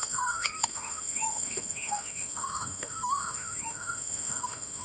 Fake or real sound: fake